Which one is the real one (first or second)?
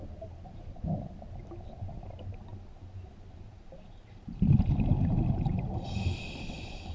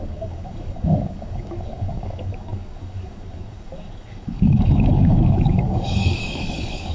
first